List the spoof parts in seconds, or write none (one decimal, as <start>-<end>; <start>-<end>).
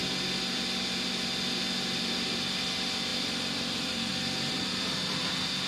none